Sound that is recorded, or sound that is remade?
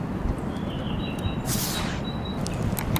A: recorded